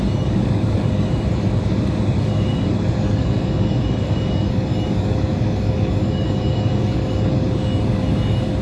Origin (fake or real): fake